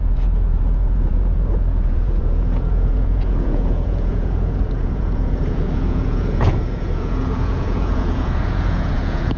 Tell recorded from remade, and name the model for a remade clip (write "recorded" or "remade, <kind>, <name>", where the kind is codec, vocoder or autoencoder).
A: remade, vocoder, Vocos